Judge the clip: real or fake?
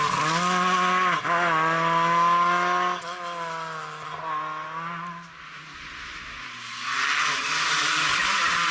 real